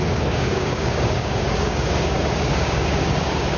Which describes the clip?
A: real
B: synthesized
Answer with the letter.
B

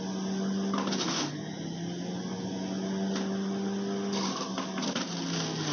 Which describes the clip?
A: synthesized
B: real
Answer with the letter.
B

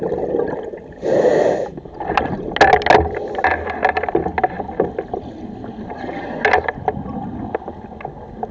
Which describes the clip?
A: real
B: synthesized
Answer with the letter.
A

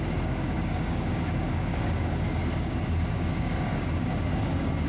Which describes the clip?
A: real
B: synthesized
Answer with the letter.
B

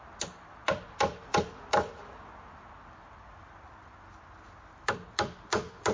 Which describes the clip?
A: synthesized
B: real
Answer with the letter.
B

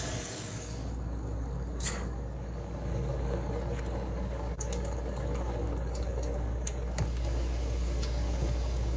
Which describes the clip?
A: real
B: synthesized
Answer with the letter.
B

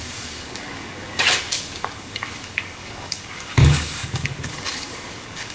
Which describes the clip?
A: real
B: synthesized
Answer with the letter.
B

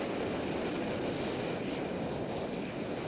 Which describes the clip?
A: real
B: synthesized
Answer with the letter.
A